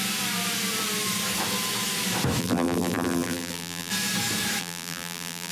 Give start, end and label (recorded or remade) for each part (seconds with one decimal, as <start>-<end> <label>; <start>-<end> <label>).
0.0-2.4 recorded; 2.4-3.9 remade; 3.9-4.6 recorded; 4.6-5.5 remade